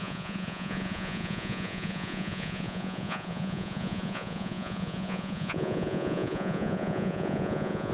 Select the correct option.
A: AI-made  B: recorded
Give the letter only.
A